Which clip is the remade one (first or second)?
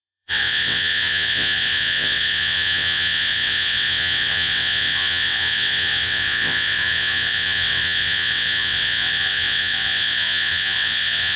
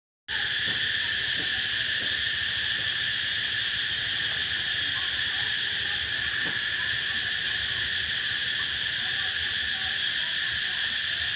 first